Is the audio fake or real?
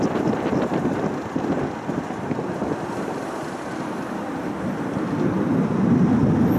real